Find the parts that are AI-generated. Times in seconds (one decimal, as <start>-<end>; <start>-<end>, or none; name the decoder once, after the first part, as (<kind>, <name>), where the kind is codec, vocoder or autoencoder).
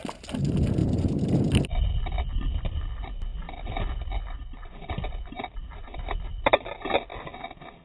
none